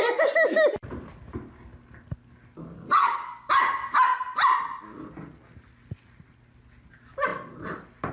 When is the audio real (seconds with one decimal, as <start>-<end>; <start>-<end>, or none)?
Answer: 0.0-3.0; 3.5-8.1